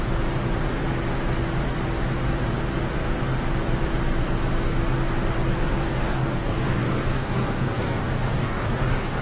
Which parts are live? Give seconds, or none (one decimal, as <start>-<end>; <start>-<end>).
0.0-5.8